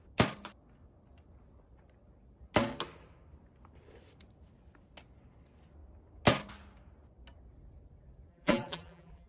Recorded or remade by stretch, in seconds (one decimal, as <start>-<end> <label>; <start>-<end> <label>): 0.0-8.3 recorded; 8.3-9.3 remade